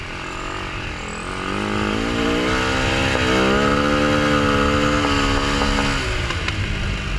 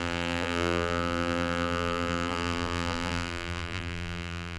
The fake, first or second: second